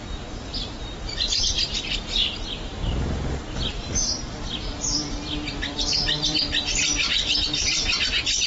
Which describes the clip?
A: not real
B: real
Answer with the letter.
B